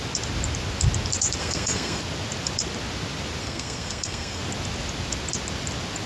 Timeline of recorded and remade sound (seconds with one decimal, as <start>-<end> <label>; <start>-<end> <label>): 0.0-1.4 recorded; 1.4-2.0 remade; 2.0-3.4 recorded; 3.4-4.4 remade; 4.4-6.1 recorded